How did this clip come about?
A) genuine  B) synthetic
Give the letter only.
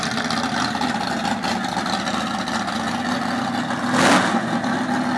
A